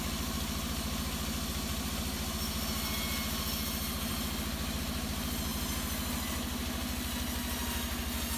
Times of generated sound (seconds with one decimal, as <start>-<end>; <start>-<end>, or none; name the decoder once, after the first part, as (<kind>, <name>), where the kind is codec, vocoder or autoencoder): 1.7-2.6 (vocoder, BigVGAN v2)